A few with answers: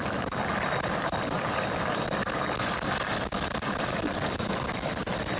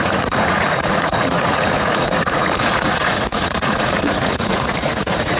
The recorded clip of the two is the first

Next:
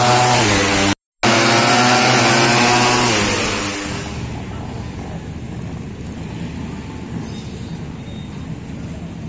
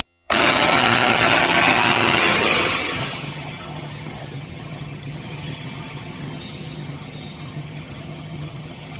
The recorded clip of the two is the first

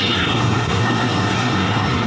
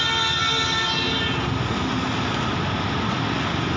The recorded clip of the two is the second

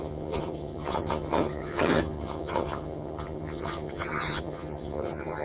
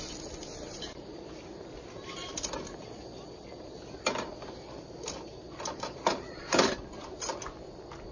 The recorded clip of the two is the second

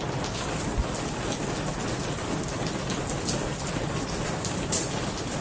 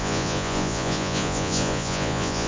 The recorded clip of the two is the first